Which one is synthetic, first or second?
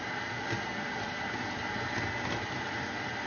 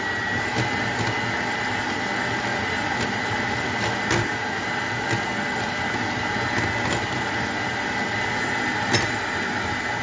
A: first